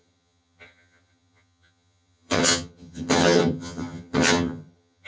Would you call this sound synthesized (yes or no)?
yes